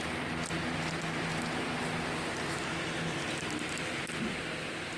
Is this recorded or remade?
recorded